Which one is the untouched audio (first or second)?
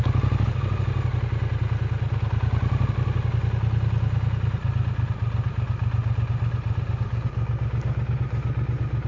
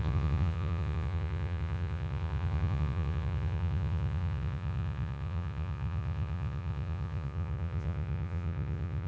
first